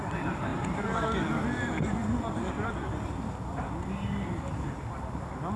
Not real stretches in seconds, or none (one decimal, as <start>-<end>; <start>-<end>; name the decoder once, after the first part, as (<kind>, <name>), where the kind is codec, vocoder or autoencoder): 0.0-0.5 (vocoder, BigVGAN v2); 3.9-5.6